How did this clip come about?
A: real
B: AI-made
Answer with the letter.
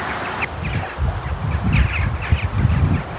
A